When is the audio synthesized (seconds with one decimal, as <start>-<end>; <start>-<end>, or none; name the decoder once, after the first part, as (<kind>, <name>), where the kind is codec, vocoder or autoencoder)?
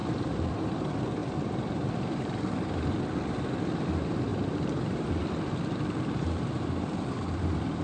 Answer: 1.2-3.0 (vocoder, BigVGAN v2); 4.3-5.1